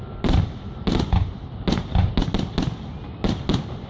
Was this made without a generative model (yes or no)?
yes